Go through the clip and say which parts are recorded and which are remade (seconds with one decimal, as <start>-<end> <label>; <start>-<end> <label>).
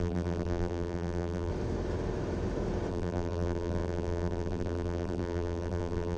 0.0-1.5 remade; 1.5-2.9 recorded; 2.9-6.2 remade